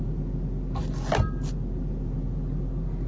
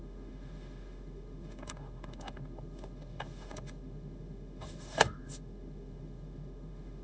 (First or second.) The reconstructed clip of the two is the second